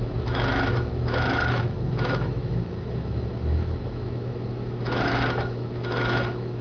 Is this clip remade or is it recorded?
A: remade